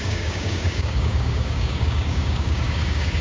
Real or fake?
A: fake